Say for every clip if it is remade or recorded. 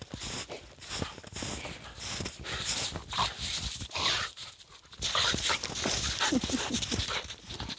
recorded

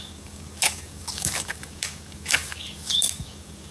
remade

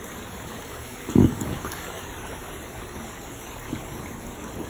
remade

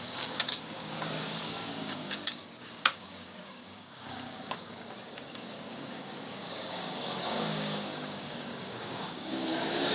remade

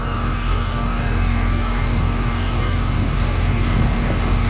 remade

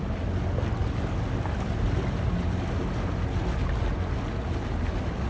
recorded